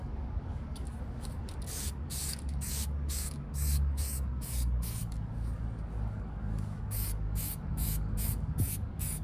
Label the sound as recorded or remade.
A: remade